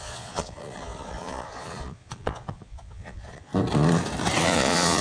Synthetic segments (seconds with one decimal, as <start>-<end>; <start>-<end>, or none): 0.0-3.5; 4.4-5.0